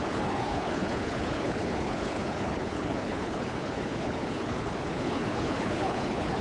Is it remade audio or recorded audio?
remade